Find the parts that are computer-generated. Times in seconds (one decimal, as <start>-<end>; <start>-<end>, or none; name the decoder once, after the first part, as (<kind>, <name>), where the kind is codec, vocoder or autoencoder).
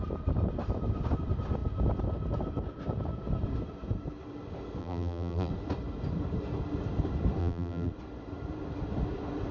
4.8-5.5 (vocoder, BigVGAN v2); 7.4-7.9